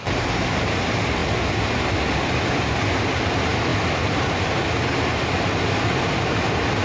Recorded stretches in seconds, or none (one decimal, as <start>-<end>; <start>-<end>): 0.0-6.8